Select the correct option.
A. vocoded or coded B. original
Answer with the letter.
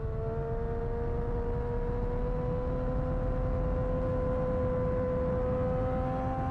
B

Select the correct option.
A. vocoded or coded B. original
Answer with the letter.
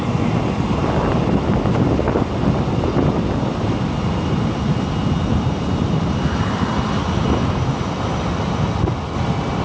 B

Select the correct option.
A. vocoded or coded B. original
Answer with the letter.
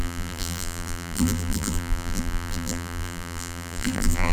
A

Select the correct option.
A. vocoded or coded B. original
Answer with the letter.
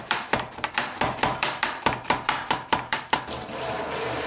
A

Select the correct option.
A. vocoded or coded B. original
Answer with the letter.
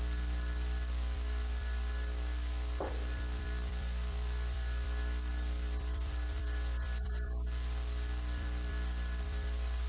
A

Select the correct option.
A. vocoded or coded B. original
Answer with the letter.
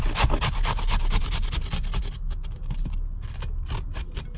B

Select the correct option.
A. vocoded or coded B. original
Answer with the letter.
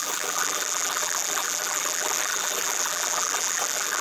A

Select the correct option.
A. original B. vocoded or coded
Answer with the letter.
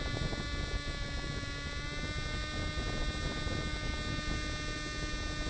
A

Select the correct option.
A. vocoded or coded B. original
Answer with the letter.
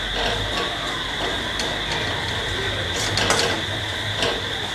B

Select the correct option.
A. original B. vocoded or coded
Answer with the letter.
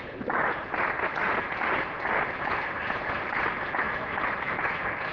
A